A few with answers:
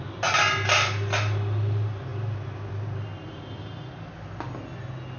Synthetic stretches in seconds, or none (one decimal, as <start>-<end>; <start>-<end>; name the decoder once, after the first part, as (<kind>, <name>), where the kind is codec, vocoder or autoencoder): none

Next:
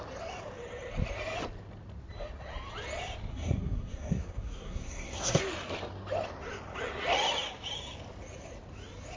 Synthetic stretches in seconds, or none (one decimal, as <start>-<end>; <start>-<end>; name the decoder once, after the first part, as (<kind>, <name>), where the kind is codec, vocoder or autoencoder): 3.3-5.4 (codec, SNAC)

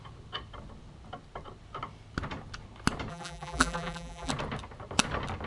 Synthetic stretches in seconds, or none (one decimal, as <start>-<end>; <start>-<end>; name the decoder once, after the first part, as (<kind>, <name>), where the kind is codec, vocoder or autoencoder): 3.1-4.3 (vocoder, BigVGAN v2)

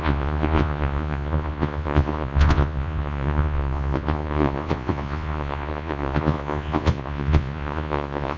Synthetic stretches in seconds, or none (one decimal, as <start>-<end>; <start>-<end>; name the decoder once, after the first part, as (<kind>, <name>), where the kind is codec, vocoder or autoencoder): 0.0-8.4 (vocoder, Vocos)

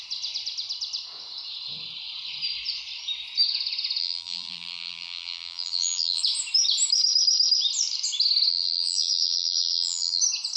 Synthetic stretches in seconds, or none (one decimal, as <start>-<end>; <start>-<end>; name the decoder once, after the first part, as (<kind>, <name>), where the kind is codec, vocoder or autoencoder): 4.0-6.2 (vocoder, BigVGAN v2); 8.5-10.2

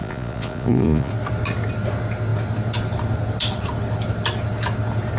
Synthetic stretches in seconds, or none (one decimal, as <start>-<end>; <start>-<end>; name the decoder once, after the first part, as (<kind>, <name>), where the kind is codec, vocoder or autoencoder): 0.0-1.1 (vocoder, Vocos)

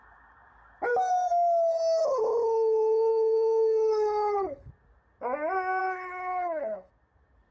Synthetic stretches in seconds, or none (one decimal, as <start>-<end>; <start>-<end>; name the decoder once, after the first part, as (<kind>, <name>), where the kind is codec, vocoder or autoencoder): 2.0-4.7 (codec, HILCodec); 5.8-6.9

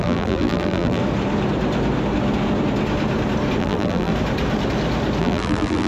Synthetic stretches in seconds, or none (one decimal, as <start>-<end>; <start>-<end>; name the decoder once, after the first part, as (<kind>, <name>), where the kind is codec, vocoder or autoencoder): 0.0-1.0 (vocoder, BigVGAN v2); 3.6-4.1; 5.2-5.9